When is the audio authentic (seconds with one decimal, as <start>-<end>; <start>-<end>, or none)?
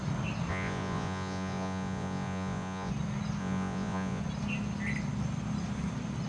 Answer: 0.0-0.5; 2.9-3.4; 4.2-6.3